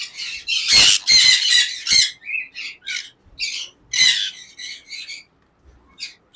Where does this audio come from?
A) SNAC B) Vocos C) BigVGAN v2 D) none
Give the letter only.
D